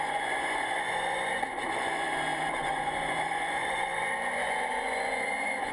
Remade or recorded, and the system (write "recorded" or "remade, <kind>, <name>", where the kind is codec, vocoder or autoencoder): remade, vocoder, Vocos